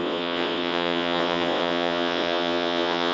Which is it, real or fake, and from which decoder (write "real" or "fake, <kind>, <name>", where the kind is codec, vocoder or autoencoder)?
fake, vocoder, WaveNeXt